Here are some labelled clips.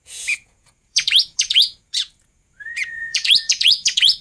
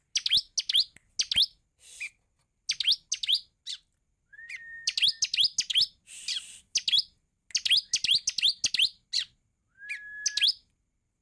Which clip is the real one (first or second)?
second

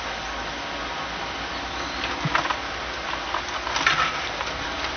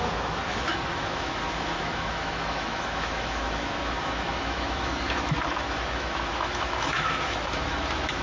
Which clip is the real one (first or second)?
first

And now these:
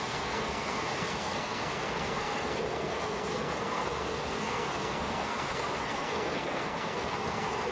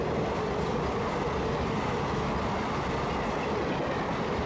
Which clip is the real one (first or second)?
second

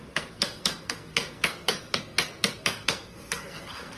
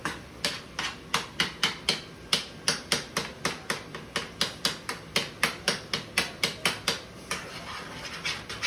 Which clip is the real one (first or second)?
second